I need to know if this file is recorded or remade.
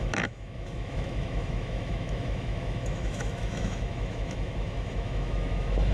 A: remade